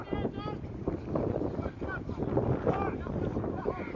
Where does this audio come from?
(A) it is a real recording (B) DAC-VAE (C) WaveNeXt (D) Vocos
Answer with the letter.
A